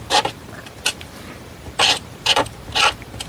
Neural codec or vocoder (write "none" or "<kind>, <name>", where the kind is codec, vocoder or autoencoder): vocoder, BigVGAN v2